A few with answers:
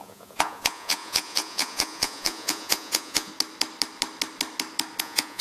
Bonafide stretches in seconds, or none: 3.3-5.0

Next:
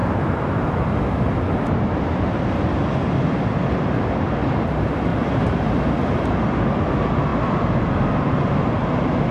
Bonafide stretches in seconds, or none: 0.7-5.1; 6.2-9.3

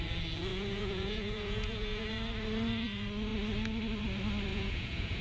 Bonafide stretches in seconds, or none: 0.0-0.5; 2.1-4.5

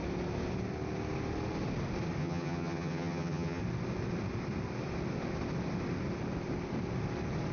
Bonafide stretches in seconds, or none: 0.0-2.2; 3.6-7.5

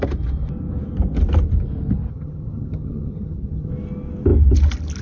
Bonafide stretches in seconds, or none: 0.0-2.1; 3.7-5.0

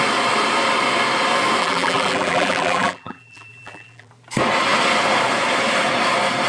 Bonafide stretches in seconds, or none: 0.0-1.6; 4.1-6.5

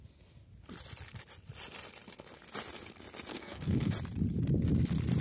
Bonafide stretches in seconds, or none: 0.0-3.3; 3.9-5.2

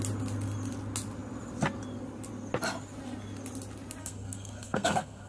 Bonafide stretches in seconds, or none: 0.0-4.0